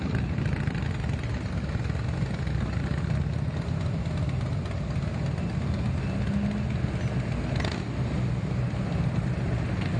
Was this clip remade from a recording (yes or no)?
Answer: no